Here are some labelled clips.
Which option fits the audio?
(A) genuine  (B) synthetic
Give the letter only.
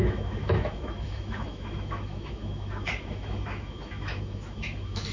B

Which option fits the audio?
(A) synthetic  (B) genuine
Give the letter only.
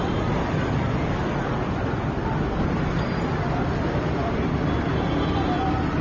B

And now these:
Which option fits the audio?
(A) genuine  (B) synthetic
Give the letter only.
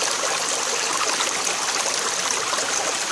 A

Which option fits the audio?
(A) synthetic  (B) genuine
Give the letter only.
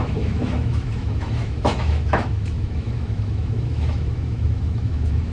A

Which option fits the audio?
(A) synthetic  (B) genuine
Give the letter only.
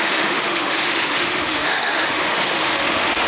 A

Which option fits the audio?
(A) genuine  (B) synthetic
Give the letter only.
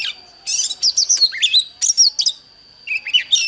A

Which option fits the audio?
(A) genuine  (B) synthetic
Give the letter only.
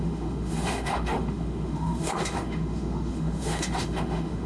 B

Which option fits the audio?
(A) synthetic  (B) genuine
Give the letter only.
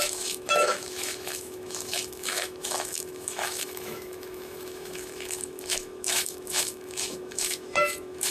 A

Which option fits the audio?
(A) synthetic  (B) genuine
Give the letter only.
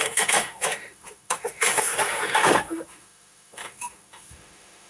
A